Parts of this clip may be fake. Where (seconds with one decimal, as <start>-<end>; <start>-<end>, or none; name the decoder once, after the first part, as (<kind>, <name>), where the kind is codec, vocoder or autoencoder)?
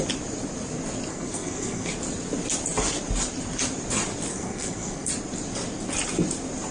1.1-1.9 (codec, SNAC); 4.3-5.1